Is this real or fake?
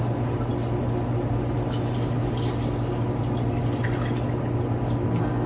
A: fake